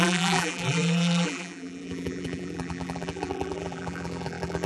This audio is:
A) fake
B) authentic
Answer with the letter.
A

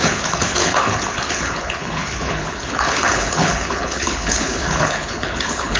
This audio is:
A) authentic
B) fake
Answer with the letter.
B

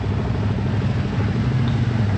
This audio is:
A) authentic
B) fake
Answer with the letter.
A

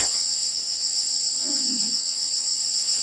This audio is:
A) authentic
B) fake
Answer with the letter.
B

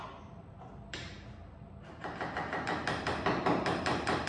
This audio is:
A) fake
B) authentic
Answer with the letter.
A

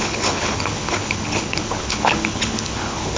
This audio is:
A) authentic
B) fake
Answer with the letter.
B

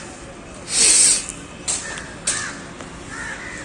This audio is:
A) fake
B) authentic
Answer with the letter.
B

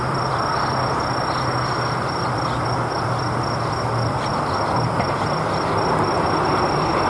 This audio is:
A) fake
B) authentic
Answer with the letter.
A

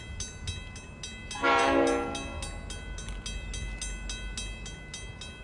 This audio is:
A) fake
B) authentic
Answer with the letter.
B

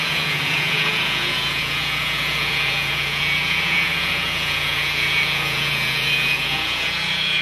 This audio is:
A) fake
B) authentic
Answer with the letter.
A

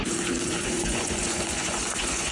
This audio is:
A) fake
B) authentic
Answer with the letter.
A